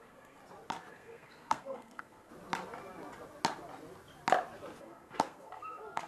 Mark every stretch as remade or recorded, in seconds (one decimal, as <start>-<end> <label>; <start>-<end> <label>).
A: 0.0-0.4 remade; 0.4-0.9 recorded; 0.9-2.3 remade; 2.3-4.8 recorded; 4.8-6.1 remade